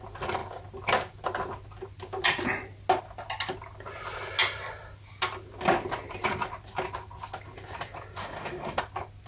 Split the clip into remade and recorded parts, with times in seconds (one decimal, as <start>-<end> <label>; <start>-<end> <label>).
0.0-8.2 recorded; 8.2-8.8 remade; 8.8-9.3 recorded